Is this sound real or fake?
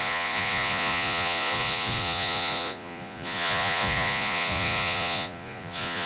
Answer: fake